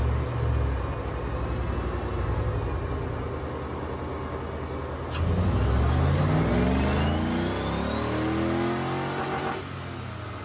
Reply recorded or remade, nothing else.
recorded